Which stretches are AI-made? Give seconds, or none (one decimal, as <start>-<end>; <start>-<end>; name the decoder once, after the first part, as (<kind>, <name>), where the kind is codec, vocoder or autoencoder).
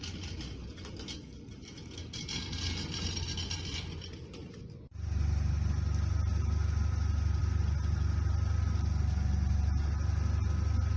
none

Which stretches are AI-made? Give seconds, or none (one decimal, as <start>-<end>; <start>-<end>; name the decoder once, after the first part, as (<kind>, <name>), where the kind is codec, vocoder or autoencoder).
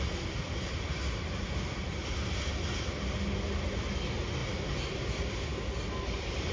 0.0-0.5 (vocoder, BigVGAN v2); 1.3-2.0; 3.8-4.4; 5.0-5.5